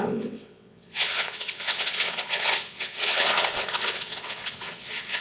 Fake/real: fake